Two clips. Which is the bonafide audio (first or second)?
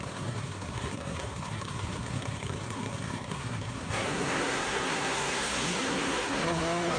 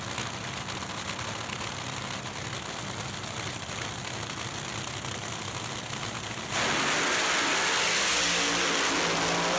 second